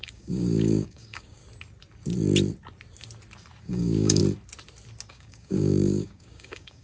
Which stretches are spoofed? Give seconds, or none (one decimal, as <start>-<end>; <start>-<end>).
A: 0.0-1.4; 3.6-4.2; 5.1-6.8